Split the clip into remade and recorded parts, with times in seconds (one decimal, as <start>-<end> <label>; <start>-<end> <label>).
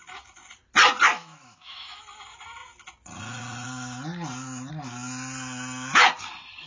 0.0-1.1 recorded; 1.1-2.0 remade; 2.0-6.7 recorded